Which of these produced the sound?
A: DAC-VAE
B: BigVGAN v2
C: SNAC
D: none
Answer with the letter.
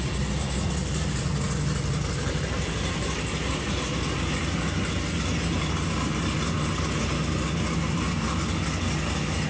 D